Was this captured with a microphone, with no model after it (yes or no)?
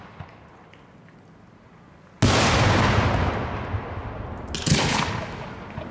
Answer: yes